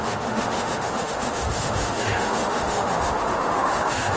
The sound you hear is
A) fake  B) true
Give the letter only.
A